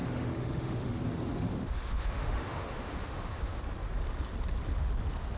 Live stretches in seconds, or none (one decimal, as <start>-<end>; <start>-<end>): 1.0-1.5; 3.6-5.4